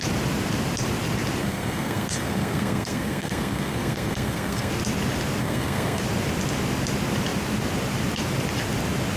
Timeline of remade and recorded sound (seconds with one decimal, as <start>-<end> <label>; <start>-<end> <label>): 0.0-1.4 recorded; 1.4-4.7 remade; 4.7-5.4 recorded; 5.4-6.0 remade; 6.0-9.2 recorded